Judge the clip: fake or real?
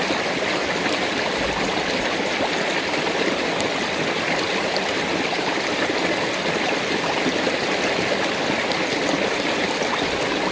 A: real